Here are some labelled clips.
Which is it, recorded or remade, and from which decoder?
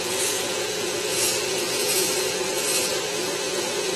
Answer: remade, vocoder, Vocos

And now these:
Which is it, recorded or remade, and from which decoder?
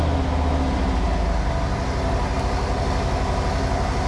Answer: recorded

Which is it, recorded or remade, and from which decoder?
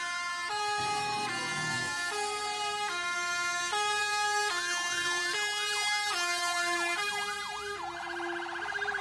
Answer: remade, vocoder, BigVGAN v2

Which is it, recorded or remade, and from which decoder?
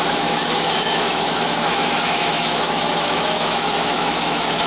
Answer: remade, autoencoder, DAC-VAE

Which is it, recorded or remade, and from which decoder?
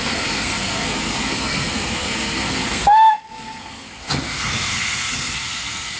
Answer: remade, codec, SNAC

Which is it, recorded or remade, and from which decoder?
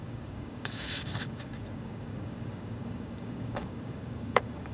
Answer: remade, codec, DAC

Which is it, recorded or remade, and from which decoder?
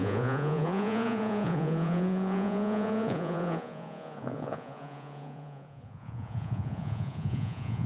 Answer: remade, vocoder, Vocos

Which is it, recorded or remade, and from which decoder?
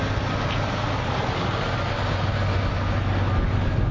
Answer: recorded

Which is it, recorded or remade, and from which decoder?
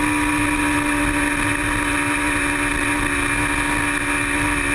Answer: recorded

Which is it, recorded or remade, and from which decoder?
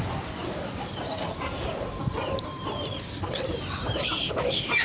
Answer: recorded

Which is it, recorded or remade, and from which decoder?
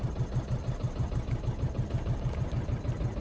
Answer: recorded